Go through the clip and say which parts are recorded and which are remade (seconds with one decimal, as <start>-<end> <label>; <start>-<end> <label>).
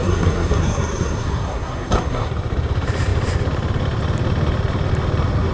0.0-2.3 remade; 2.3-5.5 recorded